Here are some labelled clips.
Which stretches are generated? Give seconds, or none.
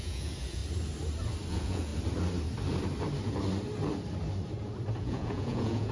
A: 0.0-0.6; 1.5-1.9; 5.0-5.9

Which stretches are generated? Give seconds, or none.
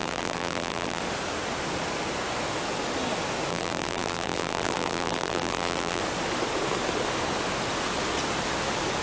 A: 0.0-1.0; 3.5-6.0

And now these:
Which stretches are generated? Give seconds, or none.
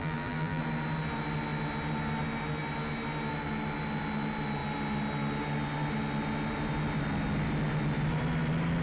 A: 0.0-0.6